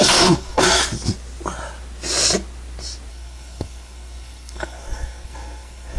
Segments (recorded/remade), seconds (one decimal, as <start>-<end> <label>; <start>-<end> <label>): 0.0-0.8 remade; 0.8-3.1 recorded; 3.1-6.0 remade